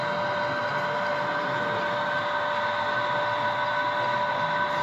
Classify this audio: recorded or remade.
recorded